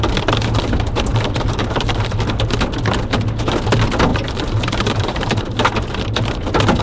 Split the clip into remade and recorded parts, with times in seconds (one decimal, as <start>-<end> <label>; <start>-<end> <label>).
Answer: 0.0-1.1 recorded; 1.1-2.2 remade; 2.2-4.1 recorded; 4.1-5.4 remade; 5.4-6.8 recorded